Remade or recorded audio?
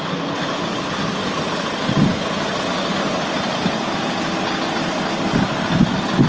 recorded